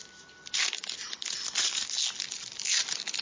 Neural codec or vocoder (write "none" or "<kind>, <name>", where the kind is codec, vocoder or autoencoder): none